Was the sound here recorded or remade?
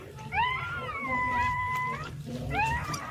remade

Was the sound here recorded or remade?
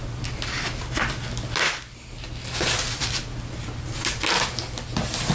recorded